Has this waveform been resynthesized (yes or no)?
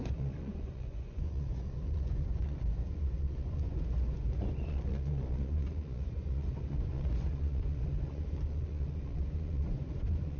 yes